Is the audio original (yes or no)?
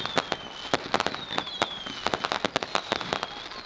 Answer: yes